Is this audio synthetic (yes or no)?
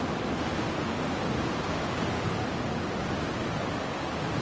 no